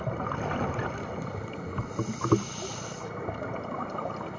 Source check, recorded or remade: recorded